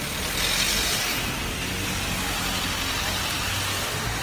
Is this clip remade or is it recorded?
recorded